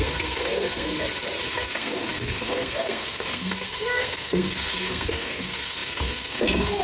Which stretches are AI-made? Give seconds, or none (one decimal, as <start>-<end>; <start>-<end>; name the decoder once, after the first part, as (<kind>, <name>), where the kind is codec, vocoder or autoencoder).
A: 0.0-0.9 (codec, SNAC); 1.5-6.8